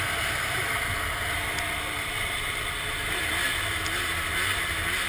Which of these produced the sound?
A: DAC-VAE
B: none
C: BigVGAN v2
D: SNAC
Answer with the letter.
B